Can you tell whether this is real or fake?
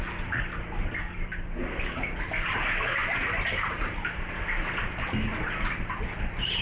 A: real